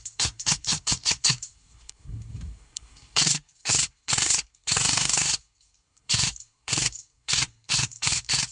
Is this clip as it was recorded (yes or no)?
no